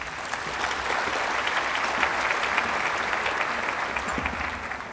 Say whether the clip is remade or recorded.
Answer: recorded